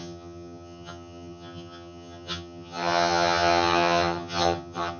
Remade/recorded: remade